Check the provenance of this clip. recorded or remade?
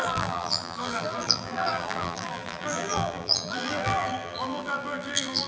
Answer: remade